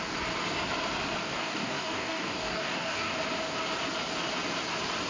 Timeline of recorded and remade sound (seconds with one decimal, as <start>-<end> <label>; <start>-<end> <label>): 0.0-1.2 recorded; 1.2-3.1 remade; 3.1-5.1 recorded